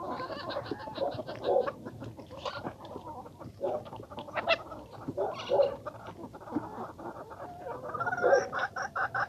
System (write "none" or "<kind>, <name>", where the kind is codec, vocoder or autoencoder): vocoder, BigVGAN v2